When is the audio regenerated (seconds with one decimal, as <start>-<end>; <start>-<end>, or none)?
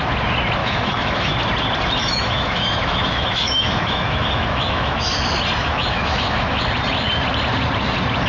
0.6-1.3; 2.0-5.1; 5.6-6.6